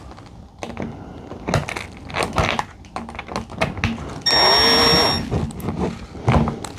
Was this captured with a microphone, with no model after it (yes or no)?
yes